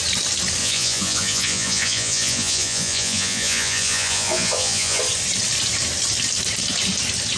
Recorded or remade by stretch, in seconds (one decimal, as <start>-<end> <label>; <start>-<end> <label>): 0.0-0.6 recorded; 0.6-5.0 remade; 5.0-7.4 recorded

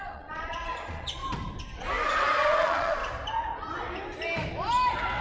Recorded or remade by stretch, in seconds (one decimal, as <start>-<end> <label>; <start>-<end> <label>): 0.0-1.2 remade; 1.2-2.1 recorded; 2.1-3.0 remade; 3.0-5.2 recorded

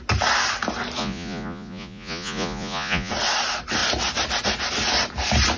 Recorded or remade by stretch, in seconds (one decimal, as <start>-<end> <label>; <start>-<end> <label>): 0.0-1.0 recorded; 1.0-3.1 remade; 3.1-5.6 recorded

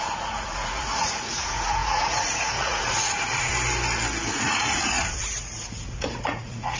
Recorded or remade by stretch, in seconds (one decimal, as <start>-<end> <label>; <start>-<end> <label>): 0.0-3.5 remade; 3.5-4.3 recorded; 4.3-6.8 remade

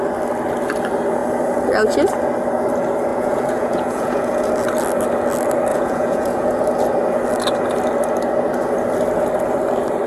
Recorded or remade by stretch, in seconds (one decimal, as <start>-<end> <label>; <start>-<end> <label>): 0.0-3.1 recorded; 3.1-4.5 remade; 4.5-5.7 recorded; 5.7-6.6 remade; 6.6-10.1 recorded

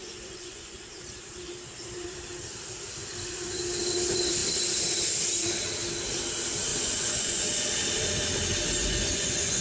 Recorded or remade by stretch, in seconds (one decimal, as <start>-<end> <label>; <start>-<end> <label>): 0.0-0.8 remade; 0.8-6.7 recorded; 6.7-7.7 remade; 7.7-8.8 recorded; 8.8-9.6 remade